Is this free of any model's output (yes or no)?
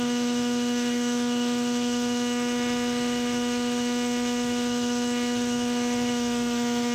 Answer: no